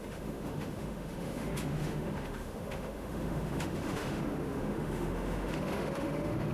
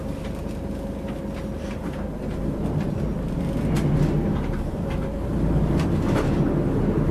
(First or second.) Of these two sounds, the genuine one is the second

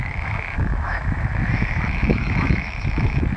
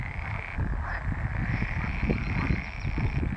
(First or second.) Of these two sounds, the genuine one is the second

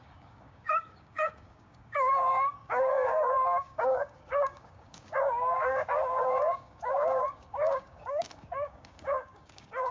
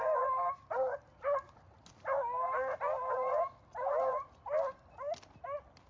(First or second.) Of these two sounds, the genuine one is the second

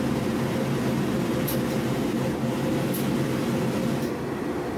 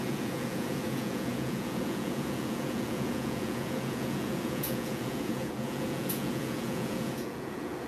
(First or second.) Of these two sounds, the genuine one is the first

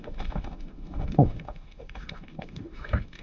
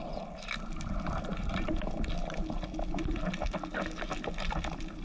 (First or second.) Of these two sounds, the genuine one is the second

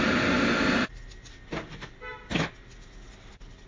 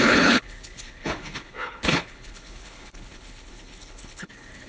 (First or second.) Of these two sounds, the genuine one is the first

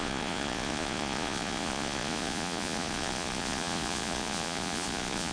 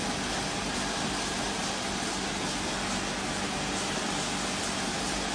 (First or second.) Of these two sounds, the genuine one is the second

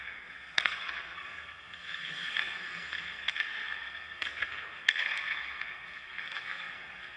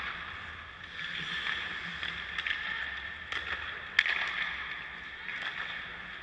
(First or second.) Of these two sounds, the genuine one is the second